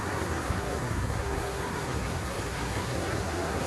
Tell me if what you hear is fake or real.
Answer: fake